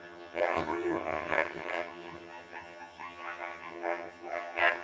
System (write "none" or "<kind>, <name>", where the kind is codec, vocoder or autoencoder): vocoder, HiFi-GAN